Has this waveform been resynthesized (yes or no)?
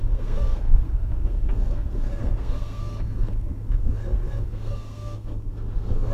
yes